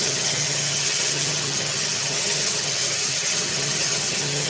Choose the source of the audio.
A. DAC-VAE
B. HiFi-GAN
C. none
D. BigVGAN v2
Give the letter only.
B